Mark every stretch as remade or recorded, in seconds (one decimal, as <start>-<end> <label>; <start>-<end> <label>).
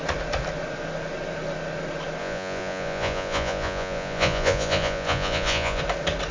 0.0-2.2 recorded; 2.2-5.8 remade; 5.8-6.3 recorded